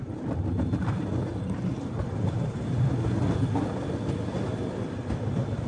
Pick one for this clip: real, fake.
real